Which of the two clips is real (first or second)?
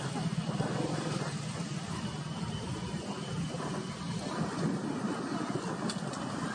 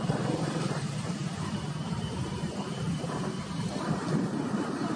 first